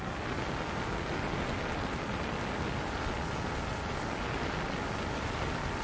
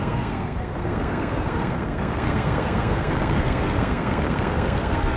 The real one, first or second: first